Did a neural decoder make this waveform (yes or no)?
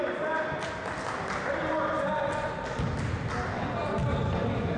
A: no